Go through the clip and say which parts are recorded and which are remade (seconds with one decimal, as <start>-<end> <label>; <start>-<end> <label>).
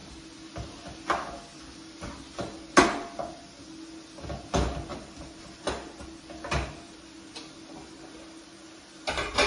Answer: 0.0-9.5 recorded